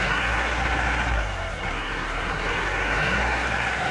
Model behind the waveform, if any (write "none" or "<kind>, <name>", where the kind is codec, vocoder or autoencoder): codec, SNAC